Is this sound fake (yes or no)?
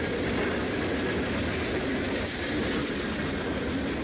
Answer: no